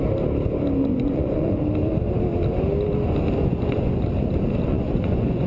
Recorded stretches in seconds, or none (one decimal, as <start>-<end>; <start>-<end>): 0.0-0.8; 1.6-3.4; 4.0-4.7